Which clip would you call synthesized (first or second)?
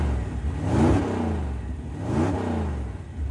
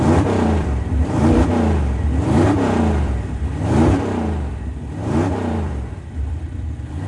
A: second